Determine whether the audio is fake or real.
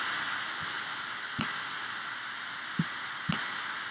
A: real